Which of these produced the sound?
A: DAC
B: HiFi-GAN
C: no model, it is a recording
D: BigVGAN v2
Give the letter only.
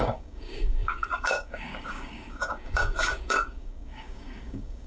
A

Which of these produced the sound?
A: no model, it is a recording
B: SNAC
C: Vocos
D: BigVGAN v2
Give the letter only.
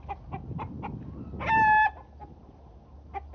A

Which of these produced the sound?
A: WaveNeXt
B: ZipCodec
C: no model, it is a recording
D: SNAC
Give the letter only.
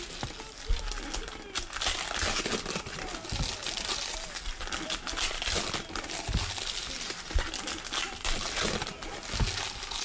C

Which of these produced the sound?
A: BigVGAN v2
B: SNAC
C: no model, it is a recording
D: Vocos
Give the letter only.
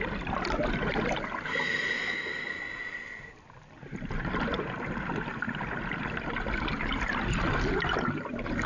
C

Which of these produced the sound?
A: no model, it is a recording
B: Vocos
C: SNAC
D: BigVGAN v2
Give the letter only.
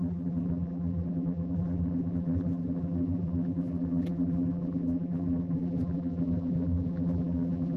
D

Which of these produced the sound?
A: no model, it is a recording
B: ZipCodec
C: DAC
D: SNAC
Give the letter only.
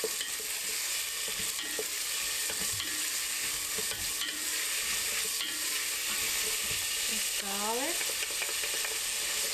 A